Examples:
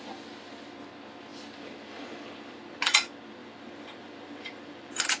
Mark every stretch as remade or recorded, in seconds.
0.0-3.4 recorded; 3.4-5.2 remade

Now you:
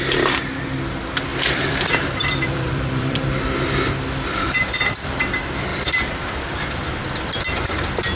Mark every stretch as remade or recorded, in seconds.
0.0-1.3 recorded; 1.3-3.3 remade; 3.3-5.7 recorded; 5.7-6.9 remade; 6.9-8.2 recorded

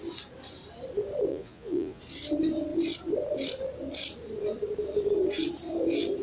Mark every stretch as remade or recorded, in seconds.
0.0-1.3 recorded; 1.3-2.0 remade; 2.0-6.2 recorded

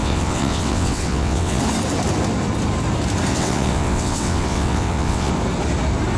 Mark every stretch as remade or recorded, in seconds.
0.0-1.6 remade; 1.6-3.3 recorded; 3.3-5.3 remade; 5.3-6.2 recorded

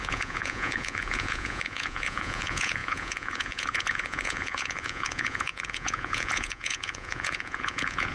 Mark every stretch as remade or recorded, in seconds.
0.0-8.1 remade